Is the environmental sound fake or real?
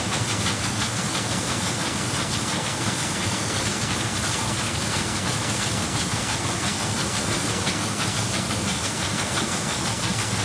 fake